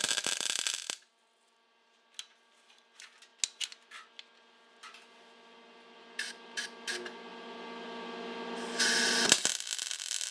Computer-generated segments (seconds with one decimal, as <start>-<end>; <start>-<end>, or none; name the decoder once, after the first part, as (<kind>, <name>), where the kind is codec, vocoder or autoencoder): none